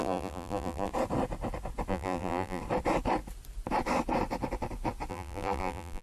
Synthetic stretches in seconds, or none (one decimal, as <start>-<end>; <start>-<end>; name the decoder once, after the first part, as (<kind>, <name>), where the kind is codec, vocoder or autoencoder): 0.0-0.9 (vocoder, BigVGAN v2); 1.9-2.6; 5.1-6.0